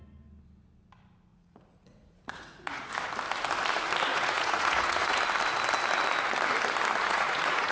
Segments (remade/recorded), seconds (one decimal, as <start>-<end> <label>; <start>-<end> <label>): 0.0-1.3 recorded; 1.3-2.9 remade; 2.9-4.1 recorded; 4.1-5.2 remade; 5.2-7.0 recorded; 7.0-7.7 remade

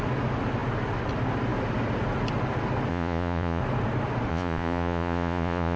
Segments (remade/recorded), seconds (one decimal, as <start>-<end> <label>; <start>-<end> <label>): 0.0-2.9 recorded; 2.9-3.6 remade; 3.6-4.3 recorded; 4.3-5.8 remade

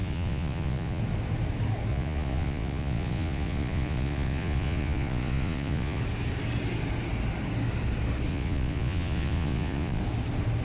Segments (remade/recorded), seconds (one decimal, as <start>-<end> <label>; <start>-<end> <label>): 0.0-1.0 remade; 1.0-1.9 recorded; 1.9-6.0 remade; 6.0-8.3 recorded; 8.3-10.0 remade; 10.0-10.6 recorded

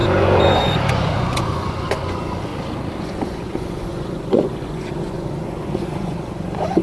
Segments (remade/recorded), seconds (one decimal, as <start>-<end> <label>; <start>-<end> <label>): 0.0-2.5 remade; 2.5-3.0 recorded; 3.0-6.8 remade